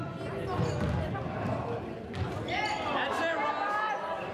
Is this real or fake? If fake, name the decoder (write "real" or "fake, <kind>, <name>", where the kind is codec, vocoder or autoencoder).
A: real